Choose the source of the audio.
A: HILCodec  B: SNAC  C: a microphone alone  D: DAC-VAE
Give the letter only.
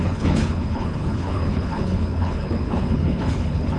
A